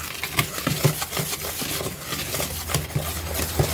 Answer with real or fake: real